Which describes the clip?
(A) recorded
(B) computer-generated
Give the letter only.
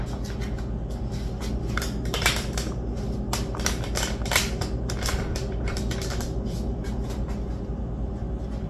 A